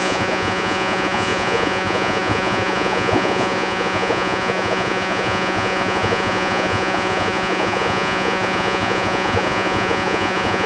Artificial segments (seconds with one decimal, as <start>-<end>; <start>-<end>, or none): 0.0-10.7